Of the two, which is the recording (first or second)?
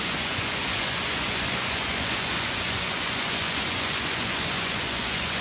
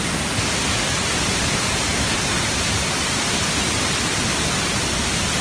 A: second